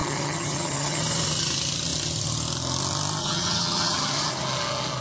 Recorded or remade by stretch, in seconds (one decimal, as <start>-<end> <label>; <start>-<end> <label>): 0.0-1.0 remade; 1.0-3.2 recorded; 3.2-4.3 remade; 4.3-5.0 recorded